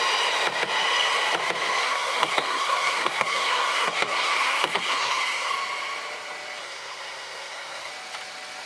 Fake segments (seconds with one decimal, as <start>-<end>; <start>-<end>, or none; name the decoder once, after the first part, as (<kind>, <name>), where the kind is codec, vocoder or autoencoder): 1.8-5.5 (codec, SNAC); 6.6-7.9